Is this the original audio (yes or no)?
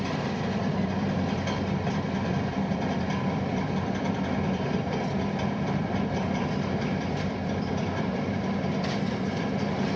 no